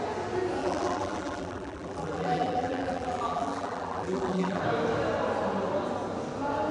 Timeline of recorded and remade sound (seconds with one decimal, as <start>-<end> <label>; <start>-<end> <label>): 0.0-0.6 recorded; 0.6-4.6 remade; 4.6-6.7 recorded